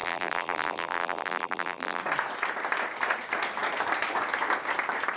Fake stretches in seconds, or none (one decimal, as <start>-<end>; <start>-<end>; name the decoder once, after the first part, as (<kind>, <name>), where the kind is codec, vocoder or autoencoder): 0.0-2.0 (vocoder, BigVGAN v2)